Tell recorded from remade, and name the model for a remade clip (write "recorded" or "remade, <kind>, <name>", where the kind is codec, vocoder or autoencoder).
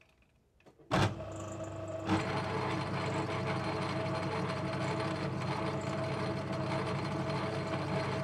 recorded